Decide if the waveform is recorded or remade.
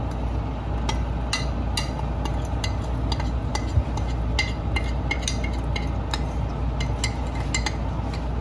recorded